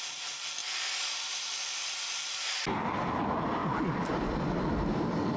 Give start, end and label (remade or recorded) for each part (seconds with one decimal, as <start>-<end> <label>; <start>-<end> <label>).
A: 0.0-5.4 recorded